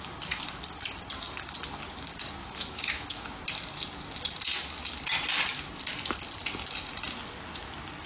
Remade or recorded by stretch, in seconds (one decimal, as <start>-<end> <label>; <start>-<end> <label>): 0.0-2.4 recorded; 2.4-3.4 remade; 3.4-8.1 recorded